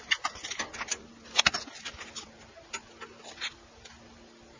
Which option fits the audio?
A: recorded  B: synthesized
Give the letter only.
A